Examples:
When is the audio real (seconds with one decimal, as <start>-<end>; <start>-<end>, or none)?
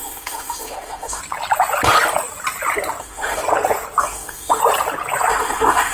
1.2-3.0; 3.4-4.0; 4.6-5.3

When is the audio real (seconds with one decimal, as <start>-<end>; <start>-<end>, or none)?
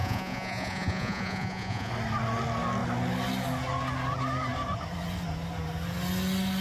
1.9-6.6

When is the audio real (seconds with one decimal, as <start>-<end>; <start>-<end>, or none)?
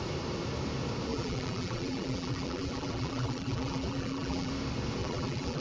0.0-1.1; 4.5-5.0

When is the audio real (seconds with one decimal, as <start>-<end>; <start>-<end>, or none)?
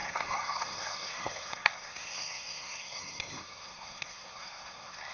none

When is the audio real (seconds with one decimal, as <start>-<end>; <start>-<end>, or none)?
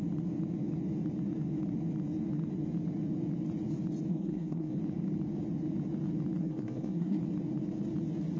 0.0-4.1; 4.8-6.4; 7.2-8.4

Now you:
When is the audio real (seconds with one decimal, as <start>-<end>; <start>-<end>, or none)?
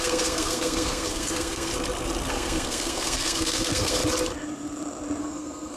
1.7-2.3; 4.0-5.2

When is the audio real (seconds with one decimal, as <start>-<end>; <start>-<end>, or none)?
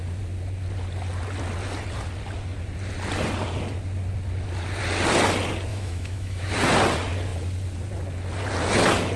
0.0-5.7; 6.5-9.2